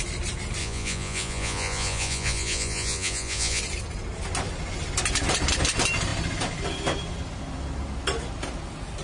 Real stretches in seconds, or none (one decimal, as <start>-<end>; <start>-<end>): 0.0-0.6; 3.6-9.0